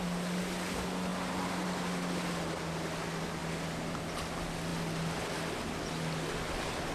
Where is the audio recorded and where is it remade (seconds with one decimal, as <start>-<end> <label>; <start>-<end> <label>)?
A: 0.0-6.9 recorded